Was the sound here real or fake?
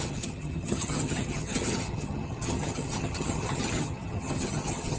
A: fake